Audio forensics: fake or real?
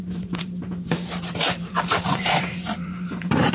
fake